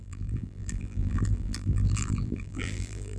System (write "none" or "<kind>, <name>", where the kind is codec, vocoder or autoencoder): vocoder, BigVGAN v2